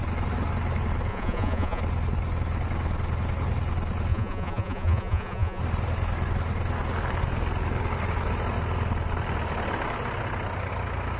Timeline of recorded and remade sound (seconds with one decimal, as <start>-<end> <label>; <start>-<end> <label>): 0.0-1.1 recorded; 1.1-1.8 remade; 1.8-4.1 recorded; 4.1-5.6 remade; 5.6-11.2 recorded